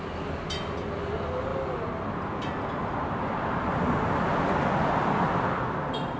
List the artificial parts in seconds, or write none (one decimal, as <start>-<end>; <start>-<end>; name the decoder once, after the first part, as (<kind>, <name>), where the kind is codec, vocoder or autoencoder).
none